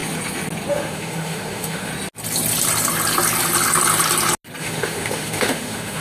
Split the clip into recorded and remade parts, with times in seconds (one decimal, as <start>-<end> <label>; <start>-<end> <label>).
0.0-0.7 recorded; 0.7-1.9 remade; 1.9-4.6 recorded; 4.6-6.0 remade